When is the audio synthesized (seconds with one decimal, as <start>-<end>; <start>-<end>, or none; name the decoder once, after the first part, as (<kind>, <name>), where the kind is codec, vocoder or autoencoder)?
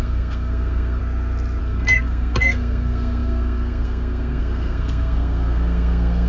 0.0-1.0 (codec, SNAC); 1.6-6.3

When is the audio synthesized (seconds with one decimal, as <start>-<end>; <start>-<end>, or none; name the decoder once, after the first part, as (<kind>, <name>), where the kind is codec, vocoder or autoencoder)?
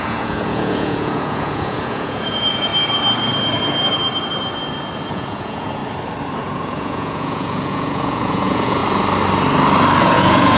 0.0-2.7 (vocoder, Vocos); 5.1-5.8; 6.4-8.8; 10.0-10.6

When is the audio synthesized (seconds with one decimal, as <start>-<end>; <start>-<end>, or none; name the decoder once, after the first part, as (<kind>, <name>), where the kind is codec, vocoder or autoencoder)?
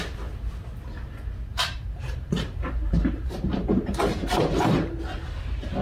1.5-5.0 (vocoder, BigVGAN v2)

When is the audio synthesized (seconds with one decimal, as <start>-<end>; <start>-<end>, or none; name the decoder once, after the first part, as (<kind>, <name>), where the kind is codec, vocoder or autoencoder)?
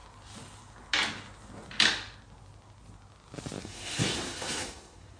3.6-5.2 (codec, SNAC)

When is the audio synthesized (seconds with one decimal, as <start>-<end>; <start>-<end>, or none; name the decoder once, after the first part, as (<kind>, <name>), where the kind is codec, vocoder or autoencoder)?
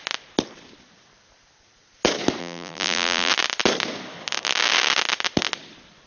2.4-3.3 (vocoder, BigVGAN v2)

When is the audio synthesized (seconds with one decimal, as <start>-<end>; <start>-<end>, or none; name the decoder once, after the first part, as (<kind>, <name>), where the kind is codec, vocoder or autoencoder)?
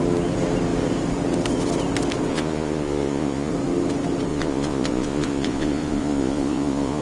2.3-3.5 (vocoder, Vocos); 4.3-7.0